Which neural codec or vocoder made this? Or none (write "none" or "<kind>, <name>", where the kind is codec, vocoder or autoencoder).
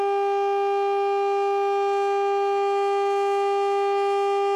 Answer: none